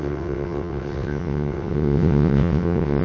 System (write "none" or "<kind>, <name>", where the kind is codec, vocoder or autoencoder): vocoder, WaveNeXt